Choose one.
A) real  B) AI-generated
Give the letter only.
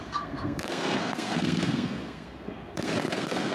B